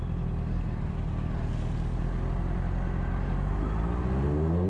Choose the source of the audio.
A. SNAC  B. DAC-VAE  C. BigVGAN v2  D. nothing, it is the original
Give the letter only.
D